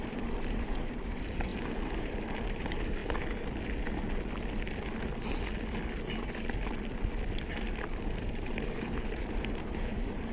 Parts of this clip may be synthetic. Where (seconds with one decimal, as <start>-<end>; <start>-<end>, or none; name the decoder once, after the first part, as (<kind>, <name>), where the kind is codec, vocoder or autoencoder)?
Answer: 0.0-1.5 (vocoder, BigVGAN v2); 2.0-3.0; 8.2-10.3